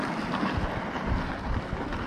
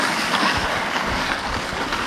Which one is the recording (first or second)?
first